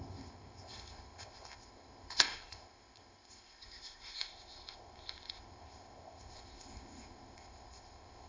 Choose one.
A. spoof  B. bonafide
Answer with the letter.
A